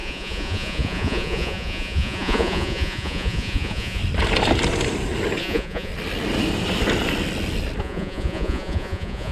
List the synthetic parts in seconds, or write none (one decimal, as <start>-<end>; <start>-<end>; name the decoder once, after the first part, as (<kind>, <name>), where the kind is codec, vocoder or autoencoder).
0.0-4.0 (vocoder, Vocos); 5.4-5.9; 7.8-9.3